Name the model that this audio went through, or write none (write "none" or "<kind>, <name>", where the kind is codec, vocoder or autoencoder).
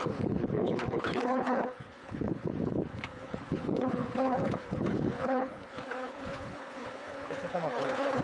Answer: codec, HILCodec